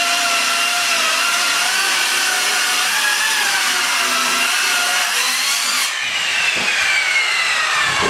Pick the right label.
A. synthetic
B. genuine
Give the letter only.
B